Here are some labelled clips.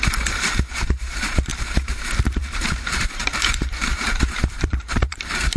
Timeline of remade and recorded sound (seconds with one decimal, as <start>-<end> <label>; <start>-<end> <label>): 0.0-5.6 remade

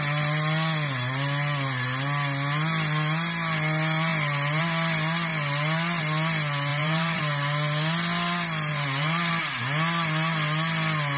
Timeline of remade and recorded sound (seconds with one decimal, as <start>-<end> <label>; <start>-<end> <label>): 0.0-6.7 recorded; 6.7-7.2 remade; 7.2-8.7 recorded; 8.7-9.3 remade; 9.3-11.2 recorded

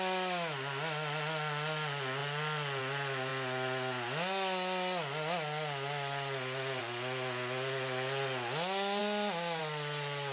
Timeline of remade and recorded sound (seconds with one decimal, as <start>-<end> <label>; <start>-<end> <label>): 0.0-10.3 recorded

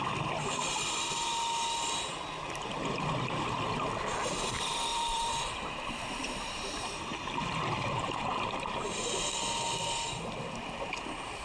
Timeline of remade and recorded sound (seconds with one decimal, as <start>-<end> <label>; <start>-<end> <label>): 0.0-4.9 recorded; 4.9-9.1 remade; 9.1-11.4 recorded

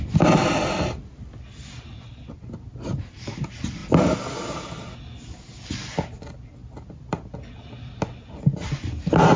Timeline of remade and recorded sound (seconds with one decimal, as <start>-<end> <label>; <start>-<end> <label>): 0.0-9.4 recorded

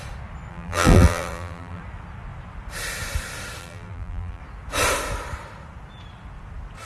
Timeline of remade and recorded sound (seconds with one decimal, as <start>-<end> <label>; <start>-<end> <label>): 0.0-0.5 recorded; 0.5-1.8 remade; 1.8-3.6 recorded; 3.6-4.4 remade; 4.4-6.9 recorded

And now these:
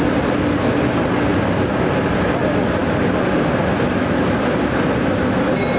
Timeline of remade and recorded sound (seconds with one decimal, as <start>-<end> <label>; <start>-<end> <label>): 0.0-5.8 recorded